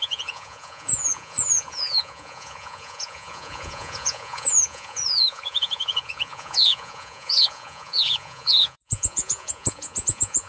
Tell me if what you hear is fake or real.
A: fake